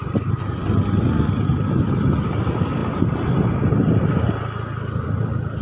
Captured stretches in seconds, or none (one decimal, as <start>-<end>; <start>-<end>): 0.0-5.6